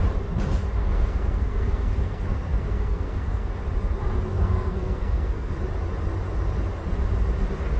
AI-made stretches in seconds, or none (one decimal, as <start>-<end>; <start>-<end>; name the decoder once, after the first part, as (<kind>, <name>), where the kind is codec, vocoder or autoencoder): 0.8-3.5 (codec, SNAC); 4.3-5.5